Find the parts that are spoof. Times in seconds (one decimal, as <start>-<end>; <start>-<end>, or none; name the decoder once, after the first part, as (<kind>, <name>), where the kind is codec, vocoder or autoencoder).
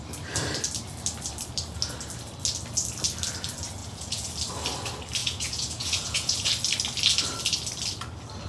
3.8-4.3 (vocoder, Vocos); 5.2-6.5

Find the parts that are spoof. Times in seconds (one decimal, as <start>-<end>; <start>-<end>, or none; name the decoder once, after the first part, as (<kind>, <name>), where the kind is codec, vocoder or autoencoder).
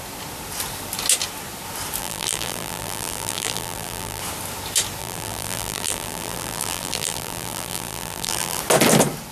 2.0-4.2 (vocoder, BigVGAN v2); 5.0-8.6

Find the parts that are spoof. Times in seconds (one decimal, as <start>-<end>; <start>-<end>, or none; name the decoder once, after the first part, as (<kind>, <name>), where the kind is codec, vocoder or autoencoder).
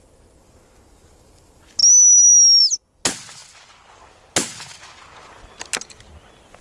none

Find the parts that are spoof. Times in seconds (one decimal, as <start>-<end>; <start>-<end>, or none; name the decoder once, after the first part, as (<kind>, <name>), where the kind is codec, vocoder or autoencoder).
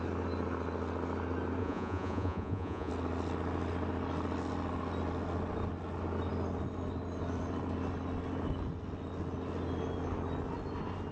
1.6-2.9 (vocoder, Vocos)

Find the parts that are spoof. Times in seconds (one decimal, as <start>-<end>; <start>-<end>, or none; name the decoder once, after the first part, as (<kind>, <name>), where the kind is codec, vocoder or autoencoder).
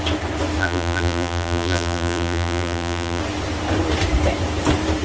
0.6-3.2 (vocoder, BigVGAN v2)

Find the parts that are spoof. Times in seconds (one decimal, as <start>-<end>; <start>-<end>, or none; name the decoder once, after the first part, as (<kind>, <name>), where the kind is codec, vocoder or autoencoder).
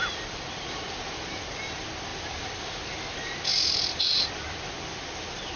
0.0-1.7 (vocoder, BigVGAN v2); 2.1-3.1; 3.5-4.3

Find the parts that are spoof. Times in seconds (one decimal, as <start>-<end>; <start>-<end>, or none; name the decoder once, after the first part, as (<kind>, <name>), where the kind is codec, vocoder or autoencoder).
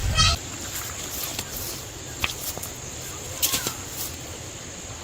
0.0-0.5 (vocoder, BigVGAN v2); 1.3-2.5